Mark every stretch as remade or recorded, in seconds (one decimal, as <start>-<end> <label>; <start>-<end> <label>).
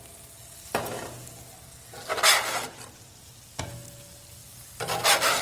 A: 0.0-5.4 recorded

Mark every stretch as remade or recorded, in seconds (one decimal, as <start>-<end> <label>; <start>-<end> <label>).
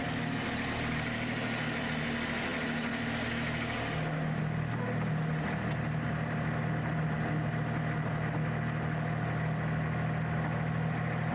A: 0.0-11.3 recorded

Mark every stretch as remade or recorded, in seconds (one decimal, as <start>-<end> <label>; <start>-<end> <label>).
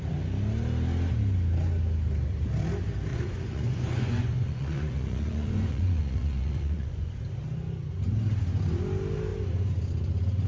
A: 0.0-3.1 recorded; 3.1-7.1 remade; 7.1-10.5 recorded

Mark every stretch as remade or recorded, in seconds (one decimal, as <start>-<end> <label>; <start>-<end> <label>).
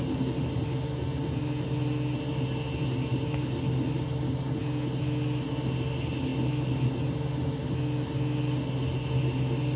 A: 0.0-9.8 recorded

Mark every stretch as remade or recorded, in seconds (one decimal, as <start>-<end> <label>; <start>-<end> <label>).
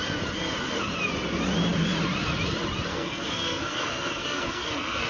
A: 0.0-2.9 recorded; 2.9-5.1 remade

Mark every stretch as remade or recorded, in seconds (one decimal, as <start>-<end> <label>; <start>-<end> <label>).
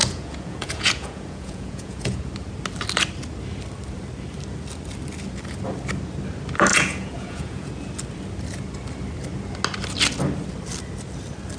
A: 0.0-2.3 remade; 2.3-6.7 recorded; 6.7-7.7 remade; 7.7-11.6 recorded